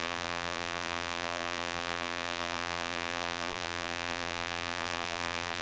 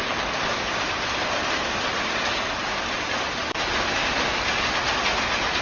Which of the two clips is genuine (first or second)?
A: second